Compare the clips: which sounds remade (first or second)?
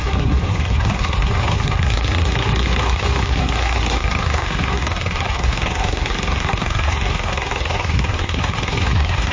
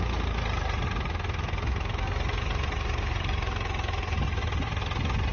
first